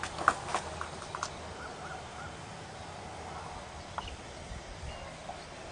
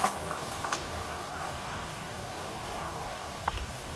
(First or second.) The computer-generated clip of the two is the second